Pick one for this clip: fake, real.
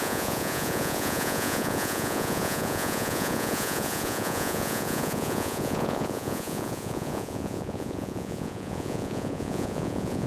fake